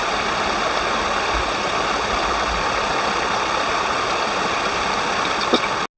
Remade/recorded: recorded